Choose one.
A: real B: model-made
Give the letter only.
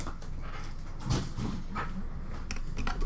A